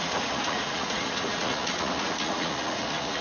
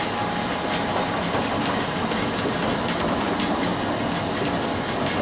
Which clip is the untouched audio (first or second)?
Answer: second